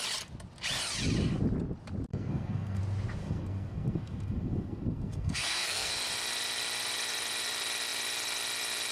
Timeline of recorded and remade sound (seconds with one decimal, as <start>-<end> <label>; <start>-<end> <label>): 0.0-2.1 recorded; 2.1-2.8 remade; 2.8-3.2 recorded; 3.2-5.9 remade; 5.9-8.9 recorded